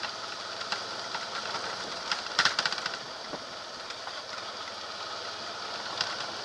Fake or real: real